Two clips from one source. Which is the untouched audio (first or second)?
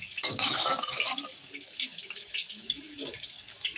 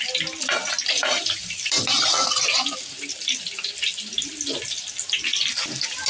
second